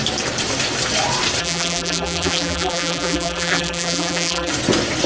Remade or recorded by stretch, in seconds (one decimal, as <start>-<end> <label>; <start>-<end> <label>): 0.0-1.4 recorded; 1.4-4.5 remade; 4.5-5.1 recorded